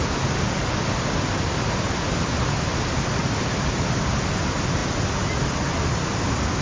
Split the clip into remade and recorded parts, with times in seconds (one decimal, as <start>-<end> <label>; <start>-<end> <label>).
0.0-3.2 recorded; 3.2-3.8 remade; 3.8-6.6 recorded